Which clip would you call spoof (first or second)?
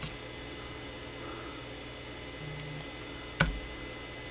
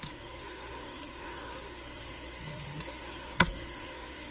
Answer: second